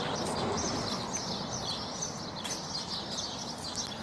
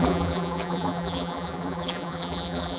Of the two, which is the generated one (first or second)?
second